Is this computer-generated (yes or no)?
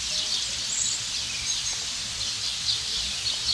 no